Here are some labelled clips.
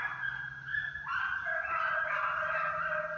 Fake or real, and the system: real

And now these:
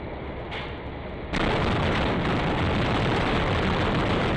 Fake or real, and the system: real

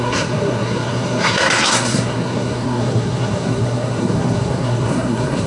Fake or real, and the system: fake, codec, SNAC